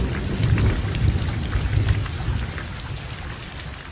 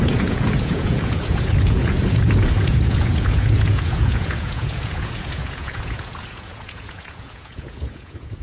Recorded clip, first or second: first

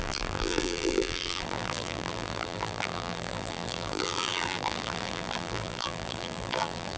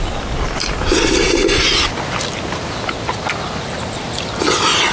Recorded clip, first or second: second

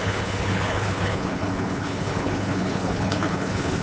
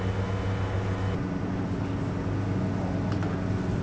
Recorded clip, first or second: second